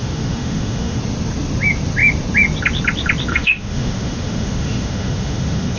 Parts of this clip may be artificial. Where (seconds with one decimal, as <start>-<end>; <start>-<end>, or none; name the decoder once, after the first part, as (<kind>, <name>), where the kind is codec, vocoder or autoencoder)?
0.0-1.0 (autoencoder, DAC-VAE); 3.3-5.8